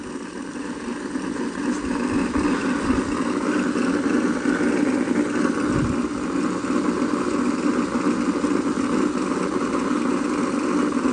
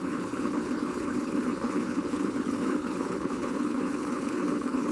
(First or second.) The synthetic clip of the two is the second